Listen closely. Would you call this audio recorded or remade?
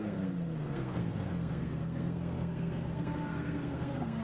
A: remade